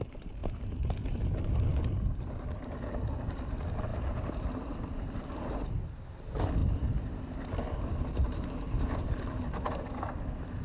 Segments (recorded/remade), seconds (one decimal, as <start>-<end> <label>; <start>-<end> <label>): 0.0-3.9 recorded; 3.9-5.7 remade; 5.7-6.6 recorded; 6.6-7.5 remade; 7.5-10.6 recorded

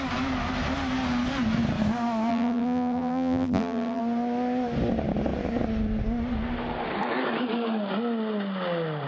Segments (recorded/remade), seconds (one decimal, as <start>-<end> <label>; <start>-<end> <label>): 0.0-2.3 recorded; 2.3-4.0 remade; 4.0-9.1 recorded

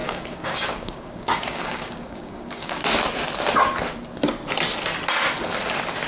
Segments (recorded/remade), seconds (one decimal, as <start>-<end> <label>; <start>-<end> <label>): 0.0-2.8 remade; 2.8-6.1 recorded

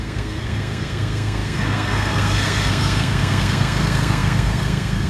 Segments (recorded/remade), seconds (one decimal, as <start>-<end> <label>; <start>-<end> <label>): 0.0-5.1 remade